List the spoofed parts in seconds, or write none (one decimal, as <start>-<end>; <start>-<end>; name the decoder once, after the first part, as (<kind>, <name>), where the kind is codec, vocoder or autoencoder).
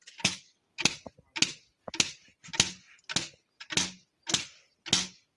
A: 0.6-1.1 (vocoder, BigVGAN v2)